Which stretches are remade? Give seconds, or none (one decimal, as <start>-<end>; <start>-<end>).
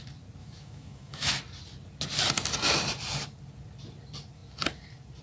0.4-1.3